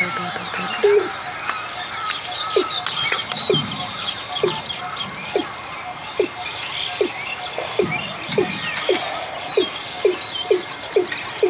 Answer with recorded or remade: recorded